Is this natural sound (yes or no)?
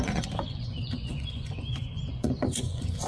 no